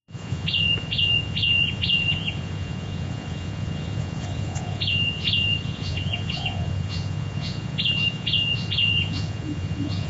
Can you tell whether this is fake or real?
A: fake